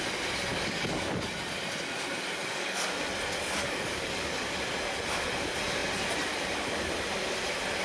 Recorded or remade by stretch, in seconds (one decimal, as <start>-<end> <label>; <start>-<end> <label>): 0.0-0.5 recorded; 0.5-1.3 remade; 1.3-2.4 recorded; 2.4-2.9 remade; 2.9-3.6 recorded; 3.6-4.6 remade; 4.6-7.8 recorded